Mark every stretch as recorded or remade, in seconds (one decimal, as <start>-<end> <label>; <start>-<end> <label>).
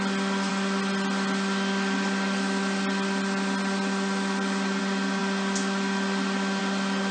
0.0-7.1 recorded